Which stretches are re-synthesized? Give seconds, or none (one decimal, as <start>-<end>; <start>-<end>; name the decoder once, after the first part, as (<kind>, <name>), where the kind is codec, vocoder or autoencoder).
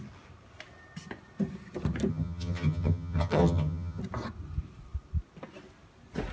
2.1-4.0 (vocoder, HiFi-GAN)